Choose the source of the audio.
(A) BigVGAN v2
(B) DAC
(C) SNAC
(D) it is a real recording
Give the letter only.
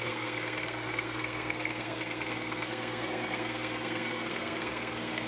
C